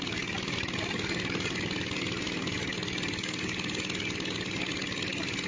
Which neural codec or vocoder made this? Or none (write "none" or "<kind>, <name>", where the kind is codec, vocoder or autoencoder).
none